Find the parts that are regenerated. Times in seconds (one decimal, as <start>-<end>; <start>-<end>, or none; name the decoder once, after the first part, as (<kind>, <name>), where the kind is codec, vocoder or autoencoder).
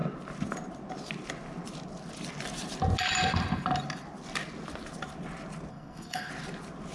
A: 5.7-6.3 (codec, SNAC)